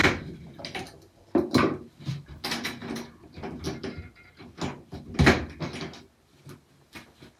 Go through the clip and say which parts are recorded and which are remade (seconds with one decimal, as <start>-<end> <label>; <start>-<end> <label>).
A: 0.0-2.8 recorded; 2.8-5.6 remade; 5.6-7.4 recorded